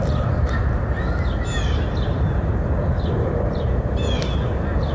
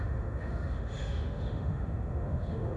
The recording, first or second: first